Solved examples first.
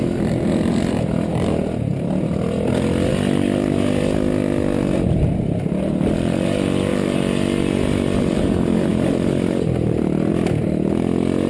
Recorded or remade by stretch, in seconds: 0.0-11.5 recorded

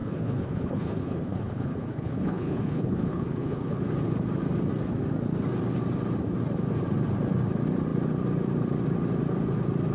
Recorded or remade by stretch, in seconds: 0.0-3.8 remade; 3.8-9.9 recorded

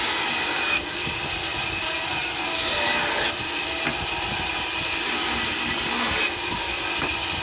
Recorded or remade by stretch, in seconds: 0.0-7.4 recorded

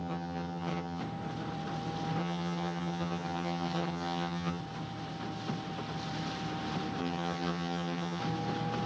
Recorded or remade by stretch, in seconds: 0.0-1.0 remade; 1.0-2.2 recorded; 2.2-4.6 remade; 4.6-7.0 recorded; 7.0-8.2 remade; 8.2-8.9 recorded

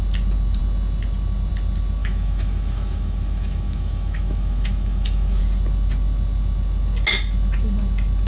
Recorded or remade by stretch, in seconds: 0.0-2.0 recorded; 2.0-5.4 remade; 5.4-8.3 recorded

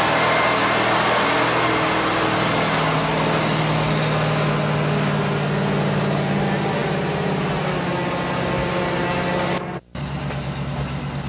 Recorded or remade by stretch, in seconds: 0.0-11.3 recorded

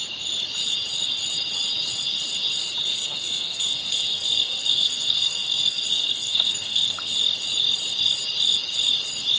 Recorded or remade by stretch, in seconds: 0.0-2.9 recorded; 2.9-7.1 remade; 7.1-9.4 recorded

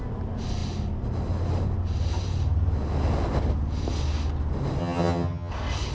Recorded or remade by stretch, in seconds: 0.0-4.8 recorded; 4.8-5.5 remade; 5.5-5.9 recorded